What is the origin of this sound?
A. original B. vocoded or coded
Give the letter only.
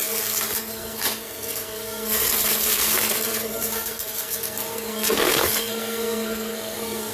B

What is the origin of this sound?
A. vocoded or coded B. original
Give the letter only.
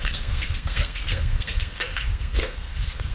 A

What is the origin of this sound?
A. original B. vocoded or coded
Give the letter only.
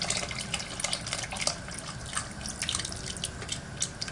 A